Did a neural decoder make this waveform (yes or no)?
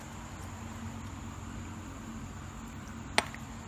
no